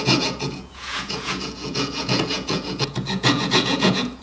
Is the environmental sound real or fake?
fake